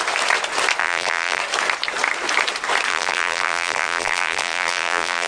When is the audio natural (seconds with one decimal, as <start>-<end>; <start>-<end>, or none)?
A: 0.0-0.8; 1.4-2.9